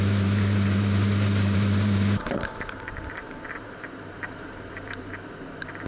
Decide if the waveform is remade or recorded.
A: remade